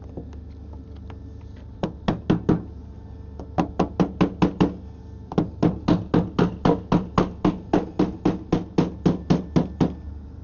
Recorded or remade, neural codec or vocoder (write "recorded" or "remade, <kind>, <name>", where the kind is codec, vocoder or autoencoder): recorded